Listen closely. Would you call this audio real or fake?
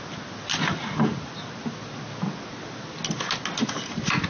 real